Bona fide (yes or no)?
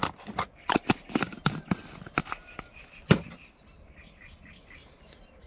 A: yes